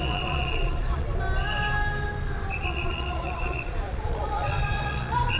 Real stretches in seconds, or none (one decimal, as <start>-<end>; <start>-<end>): 1.1-2.5